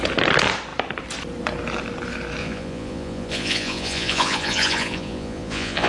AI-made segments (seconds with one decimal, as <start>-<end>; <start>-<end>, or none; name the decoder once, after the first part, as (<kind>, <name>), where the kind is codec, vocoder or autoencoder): 2.4-5.9 (vocoder, Vocos)